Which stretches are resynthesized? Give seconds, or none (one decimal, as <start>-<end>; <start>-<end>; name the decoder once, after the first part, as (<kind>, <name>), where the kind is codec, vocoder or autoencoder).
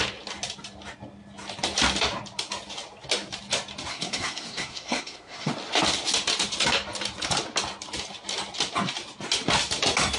3.9-5.5 (codec, SNAC)